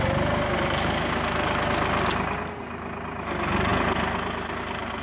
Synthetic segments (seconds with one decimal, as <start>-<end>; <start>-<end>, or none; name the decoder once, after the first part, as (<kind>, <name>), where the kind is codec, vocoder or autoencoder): none